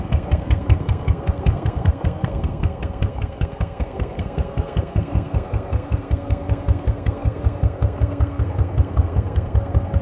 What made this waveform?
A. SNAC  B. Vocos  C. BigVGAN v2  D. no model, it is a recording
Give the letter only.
A